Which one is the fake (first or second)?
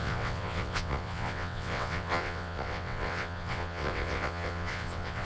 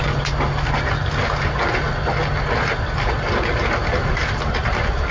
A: first